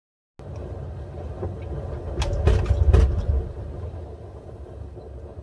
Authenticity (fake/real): real